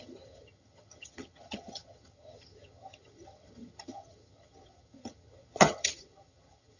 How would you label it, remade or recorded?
remade